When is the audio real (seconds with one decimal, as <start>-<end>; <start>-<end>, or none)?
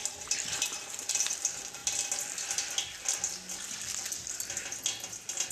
0.0-1.1; 1.8-5.1